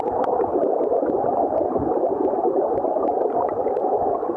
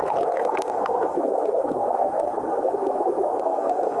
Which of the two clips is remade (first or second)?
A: second